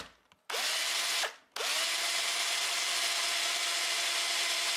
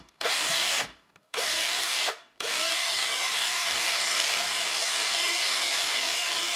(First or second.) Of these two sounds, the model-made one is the second